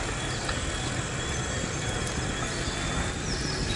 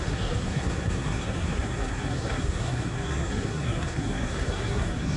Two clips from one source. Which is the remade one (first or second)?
second